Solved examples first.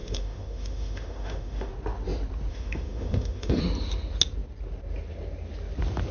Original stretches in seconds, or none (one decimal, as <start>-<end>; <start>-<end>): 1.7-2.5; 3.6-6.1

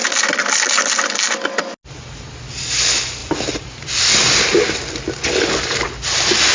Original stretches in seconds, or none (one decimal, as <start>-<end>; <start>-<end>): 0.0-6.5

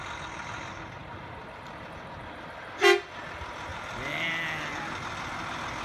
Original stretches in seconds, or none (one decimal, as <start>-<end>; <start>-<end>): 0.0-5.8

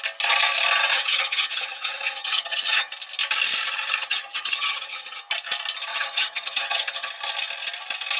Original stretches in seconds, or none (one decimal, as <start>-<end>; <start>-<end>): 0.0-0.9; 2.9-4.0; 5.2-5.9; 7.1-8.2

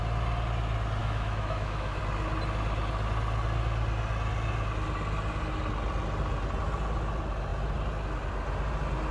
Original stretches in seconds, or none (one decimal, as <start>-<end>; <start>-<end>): 0.0-1.0; 2.0-9.1

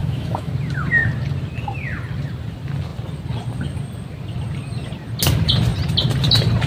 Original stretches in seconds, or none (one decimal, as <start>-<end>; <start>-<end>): 0.5-6.7

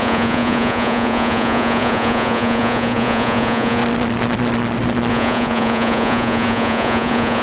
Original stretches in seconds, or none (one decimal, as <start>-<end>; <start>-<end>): 3.8-5.1